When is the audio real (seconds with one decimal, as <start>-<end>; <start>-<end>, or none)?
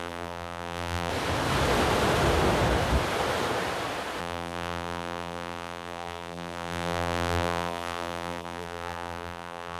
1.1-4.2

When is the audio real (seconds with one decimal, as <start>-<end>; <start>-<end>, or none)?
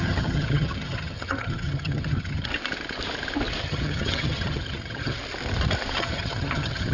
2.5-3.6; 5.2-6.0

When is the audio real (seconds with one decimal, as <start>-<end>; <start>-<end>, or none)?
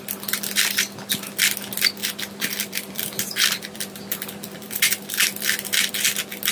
0.0-2.0; 5.9-6.5